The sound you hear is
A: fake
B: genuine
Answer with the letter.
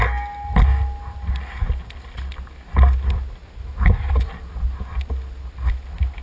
B